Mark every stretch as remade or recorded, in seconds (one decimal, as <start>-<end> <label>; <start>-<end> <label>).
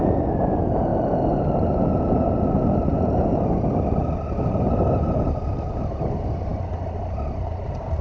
0.0-8.0 recorded